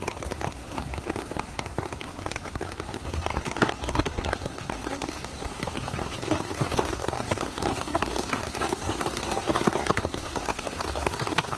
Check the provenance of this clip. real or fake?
fake